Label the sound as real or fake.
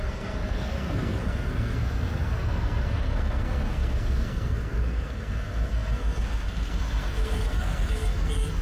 fake